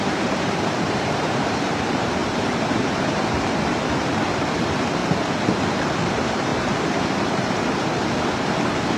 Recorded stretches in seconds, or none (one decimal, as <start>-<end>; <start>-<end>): 5.0-6.1